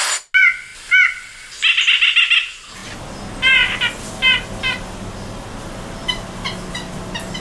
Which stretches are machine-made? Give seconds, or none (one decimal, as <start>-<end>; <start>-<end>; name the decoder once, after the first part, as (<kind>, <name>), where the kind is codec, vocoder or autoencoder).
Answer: none